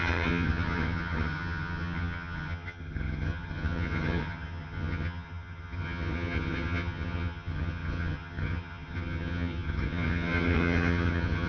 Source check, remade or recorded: remade